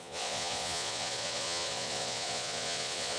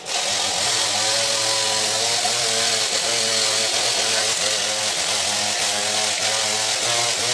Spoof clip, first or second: first